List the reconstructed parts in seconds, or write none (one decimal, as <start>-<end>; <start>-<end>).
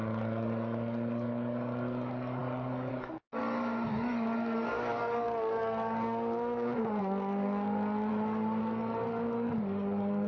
0.0-3.4; 3.9-8.1; 8.6-10.3